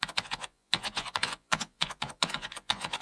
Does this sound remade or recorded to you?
remade